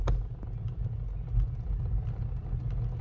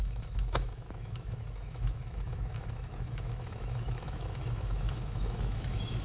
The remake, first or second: second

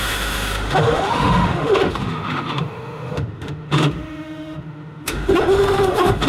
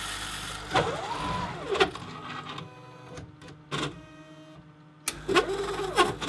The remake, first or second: first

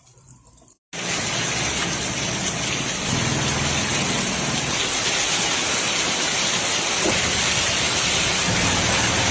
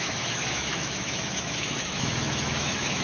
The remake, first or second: second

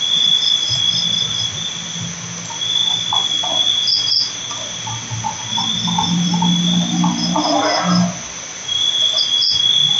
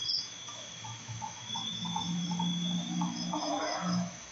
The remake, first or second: second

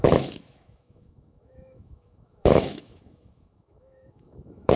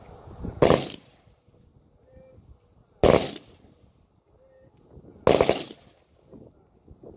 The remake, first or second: first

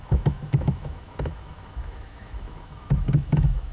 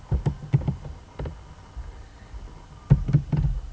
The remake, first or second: first